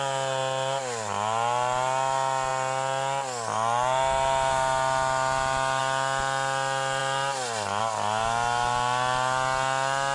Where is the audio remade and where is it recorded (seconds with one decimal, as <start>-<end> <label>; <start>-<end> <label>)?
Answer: 0.0-10.1 recorded